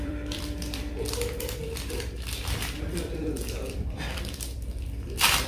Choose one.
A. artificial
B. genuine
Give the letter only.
A